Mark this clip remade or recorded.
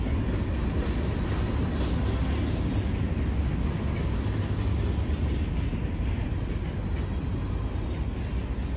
recorded